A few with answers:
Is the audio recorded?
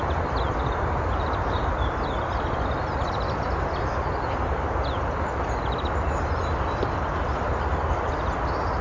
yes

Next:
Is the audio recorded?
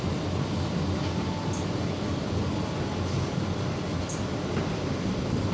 yes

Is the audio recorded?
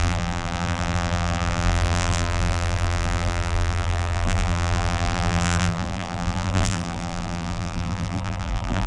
no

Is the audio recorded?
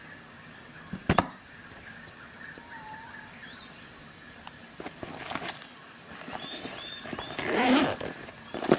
yes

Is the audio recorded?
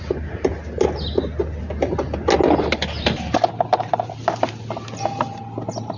yes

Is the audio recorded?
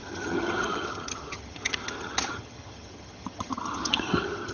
no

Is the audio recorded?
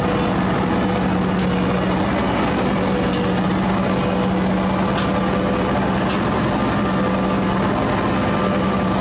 yes